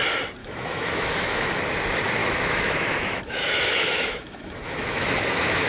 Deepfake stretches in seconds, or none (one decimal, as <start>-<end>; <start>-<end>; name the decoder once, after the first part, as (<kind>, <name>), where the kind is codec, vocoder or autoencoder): 0.4-1.6 (autoencoder, DAC-VAE); 2.2-5.7